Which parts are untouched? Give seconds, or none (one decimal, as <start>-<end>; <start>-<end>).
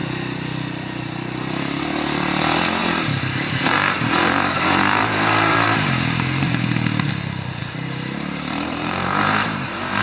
0.0-2.8; 7.1-7.6